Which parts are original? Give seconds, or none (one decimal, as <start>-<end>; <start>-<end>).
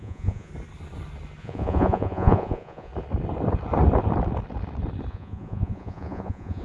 0.5-1.4; 2.9-5.1